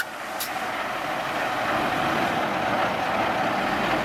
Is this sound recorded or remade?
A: recorded